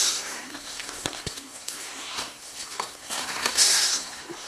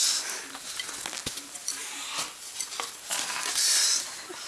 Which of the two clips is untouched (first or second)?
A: second